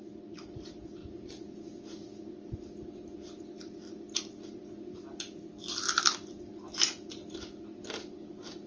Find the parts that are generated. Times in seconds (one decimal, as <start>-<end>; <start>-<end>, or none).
none

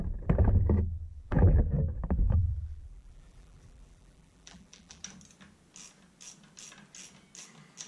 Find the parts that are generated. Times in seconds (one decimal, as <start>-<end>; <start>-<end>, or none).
1.1-1.7; 2.4-5.0

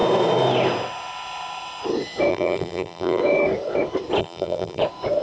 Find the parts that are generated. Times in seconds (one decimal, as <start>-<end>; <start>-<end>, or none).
2.3-3.2; 4.2-4.8

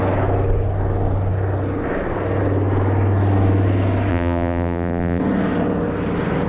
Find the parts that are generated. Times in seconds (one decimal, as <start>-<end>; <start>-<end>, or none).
4.1-5.2

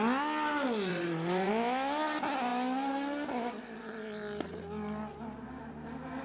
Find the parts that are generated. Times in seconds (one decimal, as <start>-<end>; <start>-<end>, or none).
0.9-1.5; 5.1-5.7

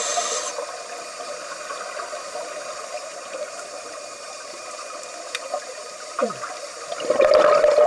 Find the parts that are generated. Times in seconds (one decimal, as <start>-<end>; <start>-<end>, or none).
3.0-6.6

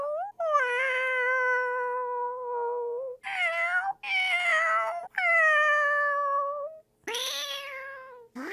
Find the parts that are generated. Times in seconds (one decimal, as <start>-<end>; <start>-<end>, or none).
none